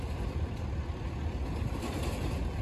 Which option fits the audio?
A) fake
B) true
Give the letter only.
B